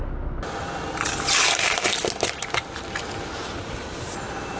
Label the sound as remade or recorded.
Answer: recorded